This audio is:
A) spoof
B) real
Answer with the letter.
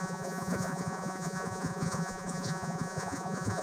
A